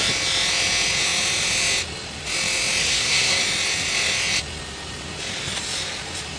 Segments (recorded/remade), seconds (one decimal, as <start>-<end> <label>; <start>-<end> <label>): 0.0-2.8 recorded; 2.8-3.4 remade; 3.4-6.4 recorded